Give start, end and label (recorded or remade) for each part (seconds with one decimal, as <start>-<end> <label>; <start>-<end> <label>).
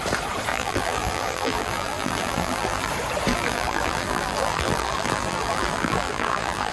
0.0-0.5 recorded; 0.5-2.9 remade; 2.9-3.3 recorded; 3.3-6.7 remade